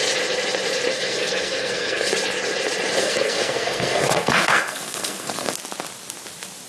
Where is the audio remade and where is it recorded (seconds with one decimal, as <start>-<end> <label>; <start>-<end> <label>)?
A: 0.0-0.9 recorded; 0.9-2.1 remade; 2.1-3.0 recorded; 3.0-5.5 remade; 5.5-6.7 recorded